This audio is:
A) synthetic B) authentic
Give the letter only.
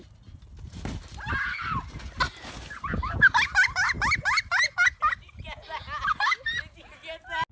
B